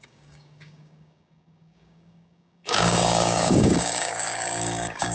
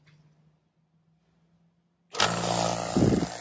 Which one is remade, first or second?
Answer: first